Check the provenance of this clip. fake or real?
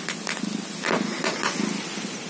real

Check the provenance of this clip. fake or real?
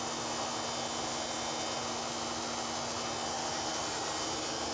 real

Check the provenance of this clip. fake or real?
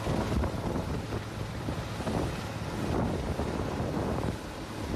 real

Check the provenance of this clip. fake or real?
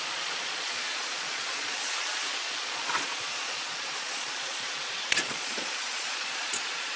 fake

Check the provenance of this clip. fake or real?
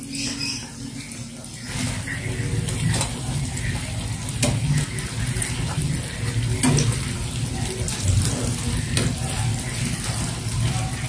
real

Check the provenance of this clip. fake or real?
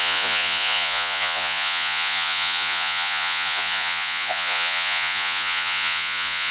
fake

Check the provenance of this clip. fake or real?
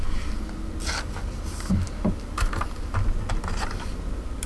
real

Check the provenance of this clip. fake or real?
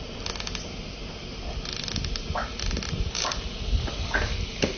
real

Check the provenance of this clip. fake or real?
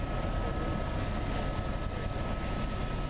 real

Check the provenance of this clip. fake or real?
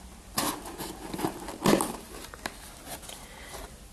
real